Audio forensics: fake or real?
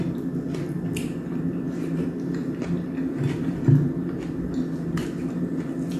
real